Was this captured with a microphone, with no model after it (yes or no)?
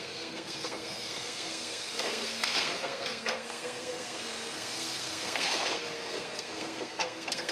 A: no